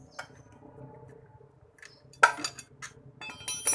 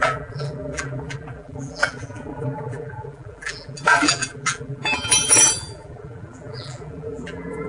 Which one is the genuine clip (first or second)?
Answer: first